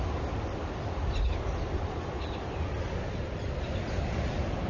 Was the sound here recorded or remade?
recorded